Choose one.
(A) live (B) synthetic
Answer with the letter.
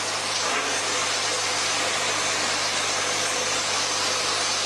A